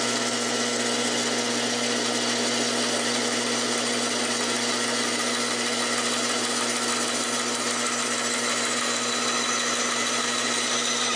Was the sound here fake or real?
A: real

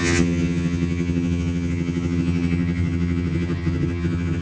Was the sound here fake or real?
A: fake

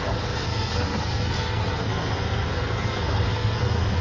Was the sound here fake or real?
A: fake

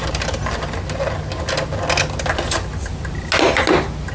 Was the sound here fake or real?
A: real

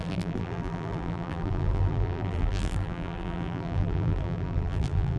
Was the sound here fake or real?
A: fake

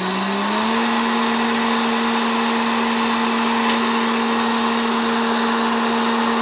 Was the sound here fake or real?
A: real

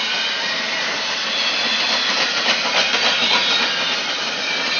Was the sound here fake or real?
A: real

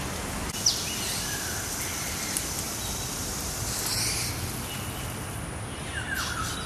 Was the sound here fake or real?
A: real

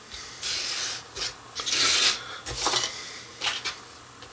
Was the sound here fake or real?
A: real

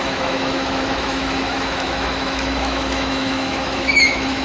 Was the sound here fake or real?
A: fake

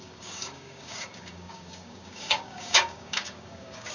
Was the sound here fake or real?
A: fake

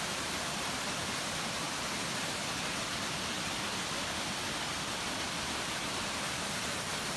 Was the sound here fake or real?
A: real